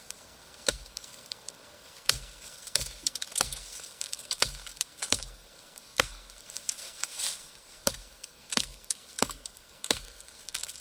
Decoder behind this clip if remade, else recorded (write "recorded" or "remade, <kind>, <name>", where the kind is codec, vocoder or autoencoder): remade, codec, SNAC